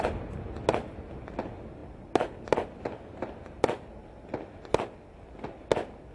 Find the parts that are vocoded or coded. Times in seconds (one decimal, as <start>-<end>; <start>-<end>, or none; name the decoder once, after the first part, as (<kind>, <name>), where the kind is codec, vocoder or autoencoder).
none

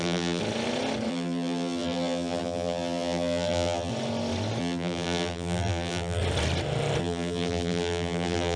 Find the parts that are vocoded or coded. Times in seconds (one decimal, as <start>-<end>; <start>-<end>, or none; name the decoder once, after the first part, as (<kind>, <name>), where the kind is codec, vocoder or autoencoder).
0.0-0.4 (vocoder, BigVGAN v2); 1.1-3.9; 4.6-6.2; 7.0-8.6